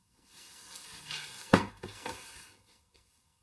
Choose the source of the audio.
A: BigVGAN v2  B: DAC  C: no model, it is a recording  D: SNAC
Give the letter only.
D